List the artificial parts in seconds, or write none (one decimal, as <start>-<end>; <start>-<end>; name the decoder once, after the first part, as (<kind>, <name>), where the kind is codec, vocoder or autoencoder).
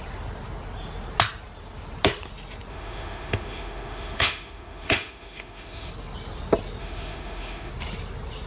2.7-5.9 (autoencoder, DAC-VAE); 6.8-7.7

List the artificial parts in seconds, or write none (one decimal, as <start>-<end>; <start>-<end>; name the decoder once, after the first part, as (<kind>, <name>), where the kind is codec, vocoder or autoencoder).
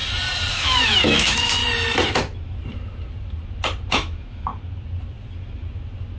0.5-1.6 (autoencoder, DAC-VAE); 3.9-4.5